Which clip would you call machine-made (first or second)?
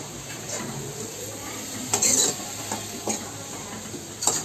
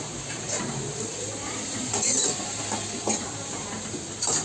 second